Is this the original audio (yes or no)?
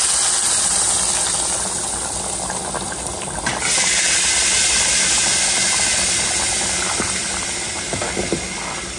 yes